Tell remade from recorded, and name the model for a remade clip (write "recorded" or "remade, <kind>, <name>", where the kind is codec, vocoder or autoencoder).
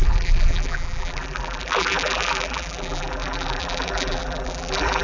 remade, vocoder, BigVGAN v2